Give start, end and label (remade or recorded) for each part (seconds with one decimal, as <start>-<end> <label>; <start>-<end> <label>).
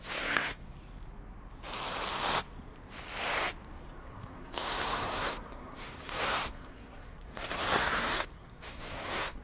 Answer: 0.0-0.8 remade; 0.8-3.8 recorded; 3.8-9.4 remade